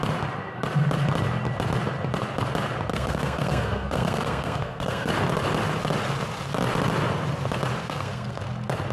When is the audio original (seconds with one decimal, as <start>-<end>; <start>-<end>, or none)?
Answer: 0.0-2.9; 5.1-7.8; 8.4-8.9

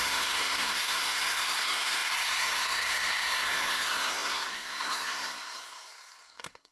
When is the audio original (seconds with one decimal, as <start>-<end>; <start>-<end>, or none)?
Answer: none